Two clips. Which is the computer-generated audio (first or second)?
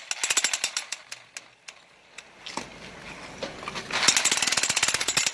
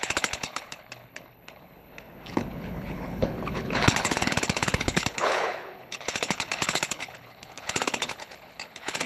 second